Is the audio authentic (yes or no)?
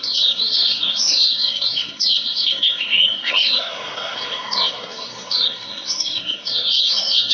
no